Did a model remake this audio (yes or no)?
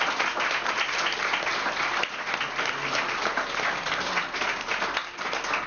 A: no